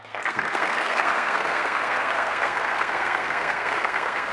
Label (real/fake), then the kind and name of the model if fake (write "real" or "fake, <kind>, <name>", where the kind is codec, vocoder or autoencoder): fake, codec, SNAC